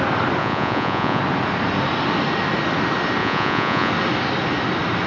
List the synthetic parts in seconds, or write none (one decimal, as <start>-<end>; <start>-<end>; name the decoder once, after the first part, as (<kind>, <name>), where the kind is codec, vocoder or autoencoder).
0.4-1.2 (vocoder, Vocos); 3.2-3.9